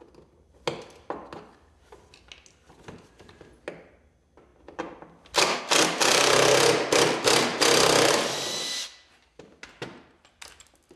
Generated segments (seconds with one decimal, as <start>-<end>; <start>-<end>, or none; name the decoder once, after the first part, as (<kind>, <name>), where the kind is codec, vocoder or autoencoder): none